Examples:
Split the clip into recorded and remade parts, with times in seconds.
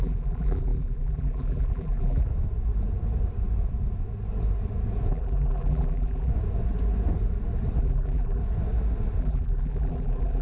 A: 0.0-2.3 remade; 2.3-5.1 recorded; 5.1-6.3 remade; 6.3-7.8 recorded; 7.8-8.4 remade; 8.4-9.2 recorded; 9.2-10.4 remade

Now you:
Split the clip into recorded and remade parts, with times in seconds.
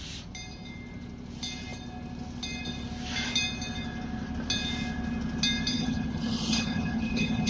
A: 0.0-5.7 recorded; 5.7-7.5 remade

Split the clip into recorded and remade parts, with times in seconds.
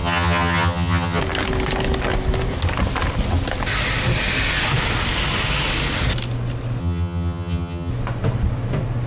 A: 0.0-1.2 remade; 1.2-6.8 recorded; 6.8-7.9 remade; 7.9-9.1 recorded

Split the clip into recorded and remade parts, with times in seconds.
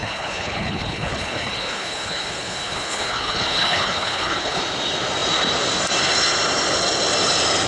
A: 0.0-4.6 remade; 4.6-7.7 recorded